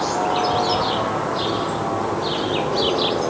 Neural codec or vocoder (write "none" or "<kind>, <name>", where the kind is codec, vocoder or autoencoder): none